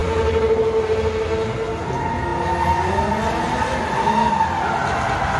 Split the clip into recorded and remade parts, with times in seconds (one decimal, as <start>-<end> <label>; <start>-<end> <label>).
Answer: 0.0-5.4 recorded